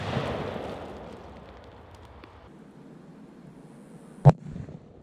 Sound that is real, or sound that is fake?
real